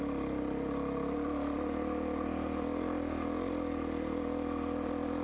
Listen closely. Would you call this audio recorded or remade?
recorded